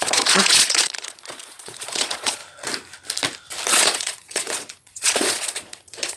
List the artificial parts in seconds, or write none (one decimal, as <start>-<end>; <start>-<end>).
0.0-2.4; 3.7-6.2